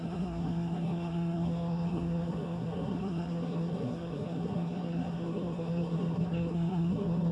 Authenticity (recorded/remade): remade